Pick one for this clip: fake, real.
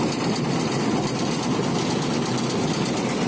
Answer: real